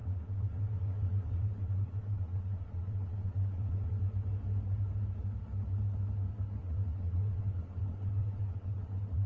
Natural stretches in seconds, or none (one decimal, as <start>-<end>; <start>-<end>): 4.0-6.6